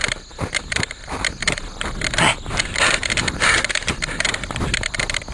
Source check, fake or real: real